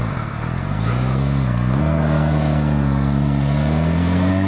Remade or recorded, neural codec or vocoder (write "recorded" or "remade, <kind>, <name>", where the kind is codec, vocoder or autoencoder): remade, codec, SNAC